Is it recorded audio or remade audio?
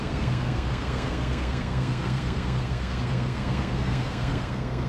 remade